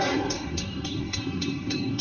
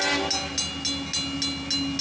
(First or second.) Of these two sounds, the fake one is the first